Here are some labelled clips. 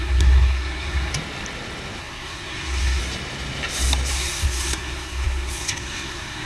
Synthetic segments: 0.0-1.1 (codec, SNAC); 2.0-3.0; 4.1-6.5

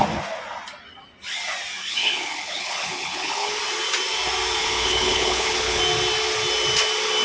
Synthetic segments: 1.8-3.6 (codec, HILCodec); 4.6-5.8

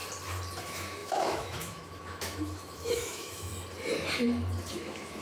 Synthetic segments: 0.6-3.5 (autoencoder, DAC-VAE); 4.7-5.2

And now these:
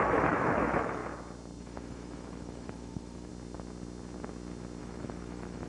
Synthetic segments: 0.0-1.0 (autoencoder, DAC-VAE); 1.6-3.3; 4.8-5.7

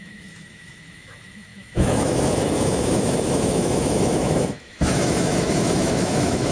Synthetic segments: 0.0-6.5 (autoencoder, DAC-VAE)